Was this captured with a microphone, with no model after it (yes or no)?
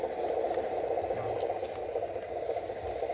yes